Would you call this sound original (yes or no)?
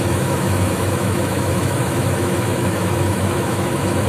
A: no